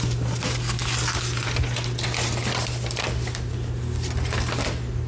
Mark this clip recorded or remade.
recorded